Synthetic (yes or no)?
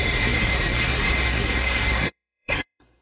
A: yes